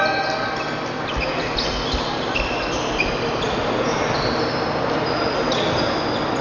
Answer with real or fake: real